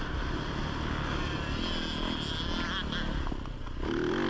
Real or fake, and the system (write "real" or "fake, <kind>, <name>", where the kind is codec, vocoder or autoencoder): real